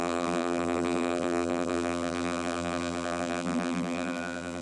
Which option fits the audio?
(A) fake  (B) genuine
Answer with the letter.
A